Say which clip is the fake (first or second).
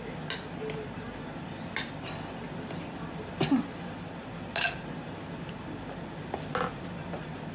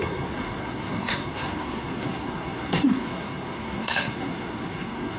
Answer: second